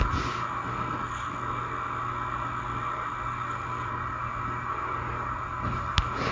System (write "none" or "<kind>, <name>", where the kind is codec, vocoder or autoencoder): none